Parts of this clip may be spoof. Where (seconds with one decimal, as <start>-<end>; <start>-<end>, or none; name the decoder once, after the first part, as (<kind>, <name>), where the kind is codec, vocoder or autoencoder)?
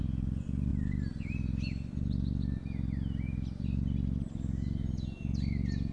none